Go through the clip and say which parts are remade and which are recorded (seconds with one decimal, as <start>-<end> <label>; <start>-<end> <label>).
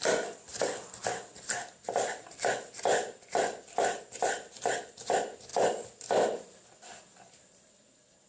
0.0-8.3 recorded